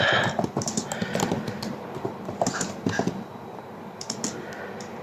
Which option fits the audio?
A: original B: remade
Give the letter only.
A